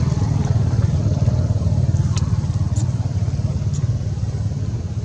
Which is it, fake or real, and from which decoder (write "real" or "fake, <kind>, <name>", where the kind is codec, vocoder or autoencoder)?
real